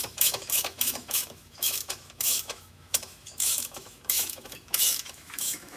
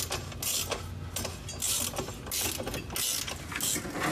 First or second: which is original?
second